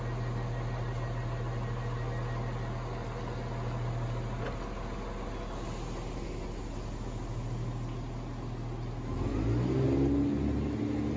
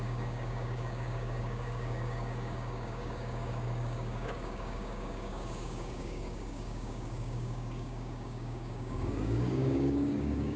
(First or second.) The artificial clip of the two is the second